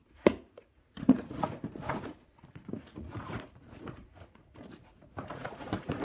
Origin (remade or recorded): remade